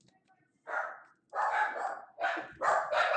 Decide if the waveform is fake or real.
real